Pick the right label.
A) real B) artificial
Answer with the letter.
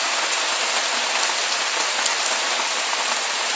A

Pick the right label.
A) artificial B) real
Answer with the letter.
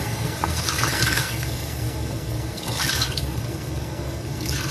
A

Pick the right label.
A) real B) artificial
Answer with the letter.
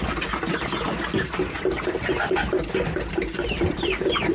A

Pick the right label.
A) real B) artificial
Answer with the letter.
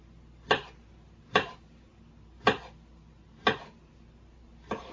A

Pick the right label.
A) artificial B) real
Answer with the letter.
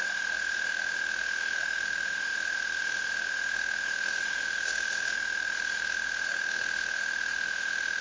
A